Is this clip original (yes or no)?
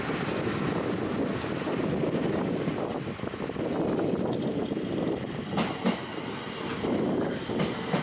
yes